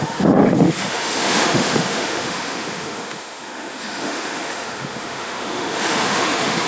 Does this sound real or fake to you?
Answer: fake